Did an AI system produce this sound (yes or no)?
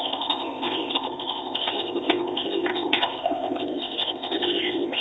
yes